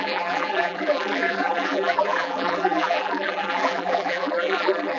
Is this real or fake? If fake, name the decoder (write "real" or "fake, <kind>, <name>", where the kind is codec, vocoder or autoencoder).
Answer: fake, vocoder, BigVGAN v2